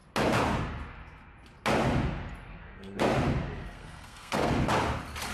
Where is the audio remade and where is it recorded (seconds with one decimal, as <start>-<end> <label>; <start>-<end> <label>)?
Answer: 0.0-2.5 recorded; 2.5-3.0 remade; 3.0-3.6 recorded; 3.6-4.5 remade; 4.5-5.3 recorded